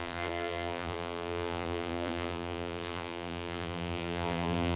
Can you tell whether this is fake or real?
fake